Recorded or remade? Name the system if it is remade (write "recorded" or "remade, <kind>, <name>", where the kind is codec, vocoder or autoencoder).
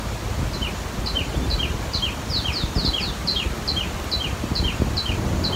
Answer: recorded